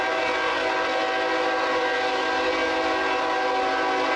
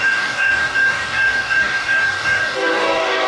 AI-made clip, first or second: second